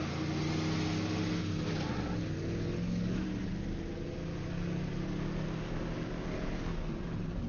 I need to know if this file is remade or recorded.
recorded